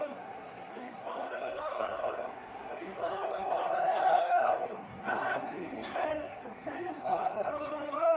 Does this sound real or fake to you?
fake